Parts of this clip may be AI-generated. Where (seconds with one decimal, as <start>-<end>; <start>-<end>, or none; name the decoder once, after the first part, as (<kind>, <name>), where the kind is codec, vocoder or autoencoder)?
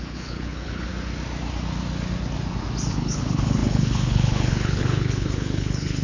0.0-0.9 (codec, HILCodec); 2.9-6.0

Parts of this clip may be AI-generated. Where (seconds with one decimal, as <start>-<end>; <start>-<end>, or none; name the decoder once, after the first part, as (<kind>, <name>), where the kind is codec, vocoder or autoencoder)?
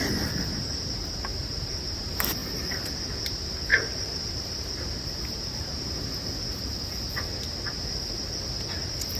3.7-4.7 (vocoder, BigVGAN v2)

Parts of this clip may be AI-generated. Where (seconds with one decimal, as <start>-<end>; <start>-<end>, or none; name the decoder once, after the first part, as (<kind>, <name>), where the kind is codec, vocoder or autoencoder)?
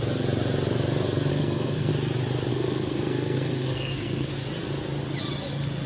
1.3-1.9 (codec, SNAC); 2.5-4.3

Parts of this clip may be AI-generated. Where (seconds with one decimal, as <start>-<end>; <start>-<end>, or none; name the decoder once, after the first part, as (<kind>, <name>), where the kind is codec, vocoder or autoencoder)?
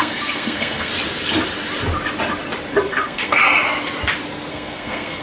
0.0-0.9 (codec, SNAC); 2.9-3.4; 4.5-5.2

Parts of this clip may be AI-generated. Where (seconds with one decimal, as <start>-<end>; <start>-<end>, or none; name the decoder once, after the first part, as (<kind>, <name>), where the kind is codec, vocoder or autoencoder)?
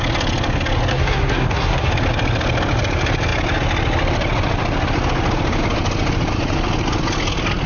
0.9-1.9 (codec, SNAC)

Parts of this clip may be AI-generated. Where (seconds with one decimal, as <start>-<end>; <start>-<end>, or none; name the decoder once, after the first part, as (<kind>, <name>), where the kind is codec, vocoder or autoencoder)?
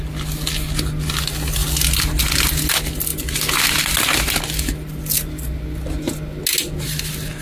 none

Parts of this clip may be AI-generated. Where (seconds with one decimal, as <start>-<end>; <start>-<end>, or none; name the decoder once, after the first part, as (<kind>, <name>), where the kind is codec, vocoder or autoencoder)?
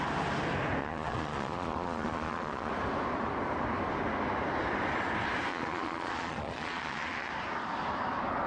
0.8-2.7 (vocoder, Vocos); 5.5-7.3